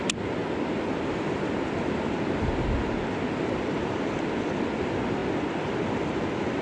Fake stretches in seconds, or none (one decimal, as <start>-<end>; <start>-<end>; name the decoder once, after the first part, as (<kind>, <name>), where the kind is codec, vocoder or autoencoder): none